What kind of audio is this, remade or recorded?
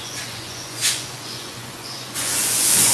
remade